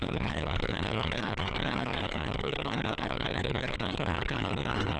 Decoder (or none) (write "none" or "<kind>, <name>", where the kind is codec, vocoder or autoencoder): codec, SNAC